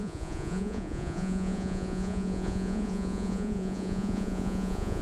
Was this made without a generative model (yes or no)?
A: no